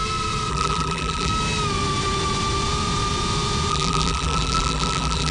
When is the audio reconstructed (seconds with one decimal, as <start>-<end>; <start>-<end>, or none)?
0.5-1.3; 3.7-5.3